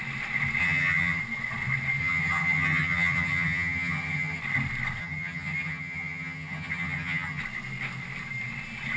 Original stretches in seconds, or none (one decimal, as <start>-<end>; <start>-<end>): 0.0-0.6; 1.2-2.0; 4.4-5.0; 7.4-9.0